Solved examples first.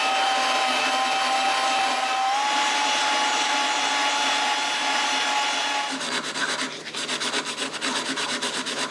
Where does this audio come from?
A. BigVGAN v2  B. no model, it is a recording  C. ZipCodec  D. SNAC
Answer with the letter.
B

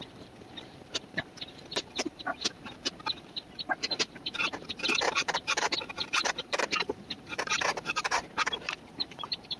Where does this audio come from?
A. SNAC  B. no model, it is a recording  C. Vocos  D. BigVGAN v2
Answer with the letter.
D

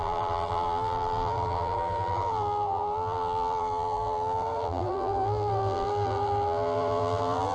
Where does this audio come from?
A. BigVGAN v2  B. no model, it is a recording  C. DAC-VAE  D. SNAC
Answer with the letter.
A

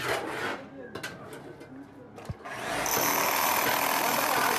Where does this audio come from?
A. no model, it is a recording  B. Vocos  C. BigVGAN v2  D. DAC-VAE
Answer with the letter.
A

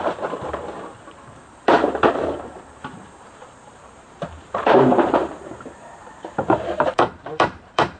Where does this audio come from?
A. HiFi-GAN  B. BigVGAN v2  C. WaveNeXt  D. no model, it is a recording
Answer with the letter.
B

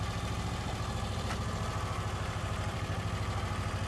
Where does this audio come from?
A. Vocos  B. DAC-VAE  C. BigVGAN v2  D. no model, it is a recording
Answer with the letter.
C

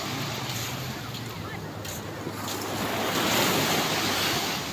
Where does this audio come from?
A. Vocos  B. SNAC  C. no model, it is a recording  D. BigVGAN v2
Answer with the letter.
C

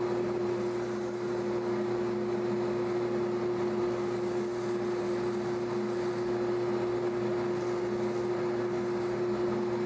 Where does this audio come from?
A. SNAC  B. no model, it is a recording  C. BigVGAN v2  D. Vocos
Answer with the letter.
B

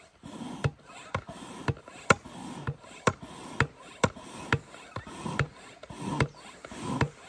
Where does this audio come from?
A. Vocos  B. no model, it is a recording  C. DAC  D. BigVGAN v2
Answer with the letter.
B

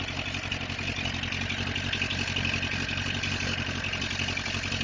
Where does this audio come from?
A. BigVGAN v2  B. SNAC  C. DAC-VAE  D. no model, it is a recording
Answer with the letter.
D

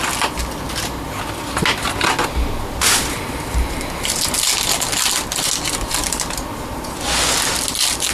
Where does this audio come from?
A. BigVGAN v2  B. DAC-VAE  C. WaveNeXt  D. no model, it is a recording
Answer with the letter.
D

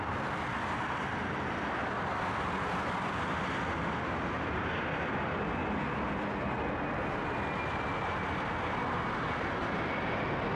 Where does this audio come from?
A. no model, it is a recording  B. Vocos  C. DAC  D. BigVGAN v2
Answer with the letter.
A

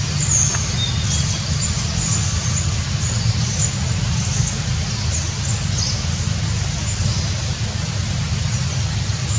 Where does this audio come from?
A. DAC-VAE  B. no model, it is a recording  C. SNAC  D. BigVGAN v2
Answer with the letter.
B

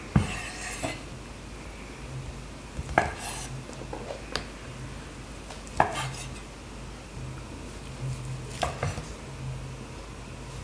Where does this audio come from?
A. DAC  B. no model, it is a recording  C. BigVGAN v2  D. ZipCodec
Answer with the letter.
B